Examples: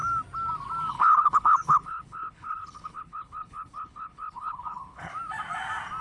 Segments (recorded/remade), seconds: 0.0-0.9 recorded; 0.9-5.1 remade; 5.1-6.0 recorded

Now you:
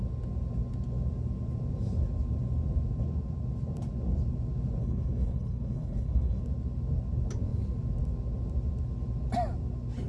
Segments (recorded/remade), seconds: 0.0-4.8 recorded; 4.8-6.4 remade; 6.4-10.1 recorded

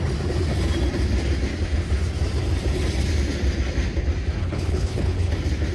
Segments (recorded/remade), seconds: 0.0-4.4 recorded; 4.4-5.3 remade; 5.3-5.7 recorded

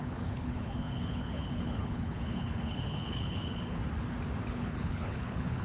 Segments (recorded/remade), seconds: 0.0-3.8 remade; 3.8-4.5 recorded; 4.5-5.6 remade

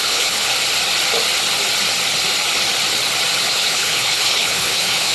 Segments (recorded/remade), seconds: 0.0-0.5 remade; 0.5-3.4 recorded; 3.4-5.1 remade

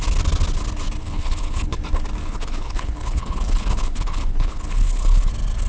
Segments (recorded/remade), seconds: 0.0-1.0 recorded; 1.0-1.8 remade; 1.8-2.2 recorded; 2.2-5.3 remade; 5.3-5.7 recorded

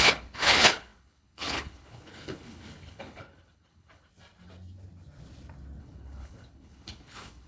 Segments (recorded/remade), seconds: 0.0-4.1 remade; 4.1-5.8 recorded; 5.8-7.5 remade

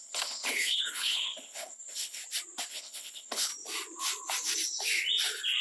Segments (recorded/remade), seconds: 0.0-2.2 remade; 2.2-2.7 recorded; 2.7-3.5 remade; 3.5-5.6 recorded